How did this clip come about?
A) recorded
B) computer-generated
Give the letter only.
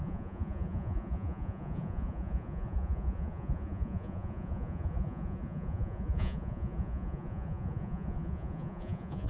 B